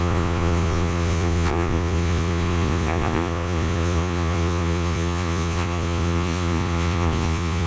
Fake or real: fake